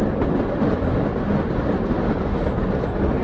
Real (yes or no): yes